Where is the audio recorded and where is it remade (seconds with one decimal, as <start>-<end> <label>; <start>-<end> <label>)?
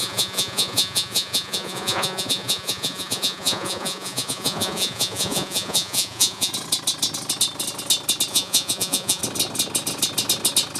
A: 0.0-6.5 remade; 6.5-8.3 recorded; 8.3-9.2 remade; 9.2-10.8 recorded